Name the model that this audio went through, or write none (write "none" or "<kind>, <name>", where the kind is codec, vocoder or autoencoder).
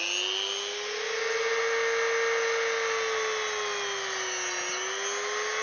none